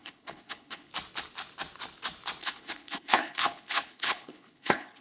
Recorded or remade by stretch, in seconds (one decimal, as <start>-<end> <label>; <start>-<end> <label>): 0.0-0.9 remade; 0.9-2.4 recorded; 2.4-5.0 remade